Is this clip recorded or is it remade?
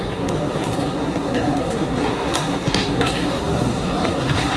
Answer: remade